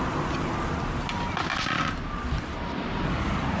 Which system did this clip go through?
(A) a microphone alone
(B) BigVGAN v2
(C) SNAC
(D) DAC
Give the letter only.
A